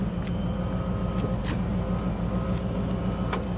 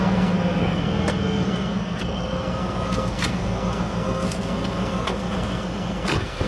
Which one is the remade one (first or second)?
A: second